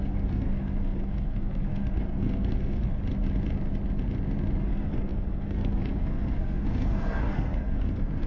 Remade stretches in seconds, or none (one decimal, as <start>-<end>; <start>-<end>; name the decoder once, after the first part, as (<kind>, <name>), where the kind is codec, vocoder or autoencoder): 0.0-3.0 (codec, SNAC); 4.6-8.3